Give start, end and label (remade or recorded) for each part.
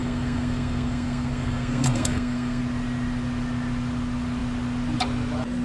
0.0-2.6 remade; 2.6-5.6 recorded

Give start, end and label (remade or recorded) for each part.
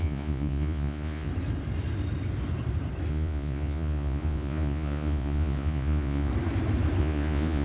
0.0-1.3 remade; 1.3-3.1 recorded; 3.1-6.3 remade; 6.3-7.0 recorded; 7.0-7.6 remade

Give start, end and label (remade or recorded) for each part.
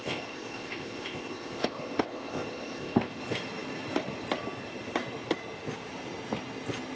0.0-3.2 remade; 3.2-7.0 recorded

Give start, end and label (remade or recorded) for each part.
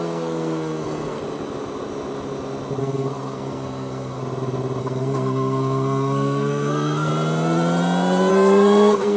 0.0-1.2 remade; 1.2-2.8 recorded; 2.8-4.2 remade; 4.2-4.8 recorded; 4.8-7.1 remade; 7.1-8.3 recorded; 8.3-9.2 remade